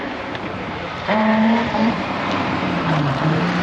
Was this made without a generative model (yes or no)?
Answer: no